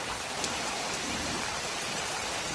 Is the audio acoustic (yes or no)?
yes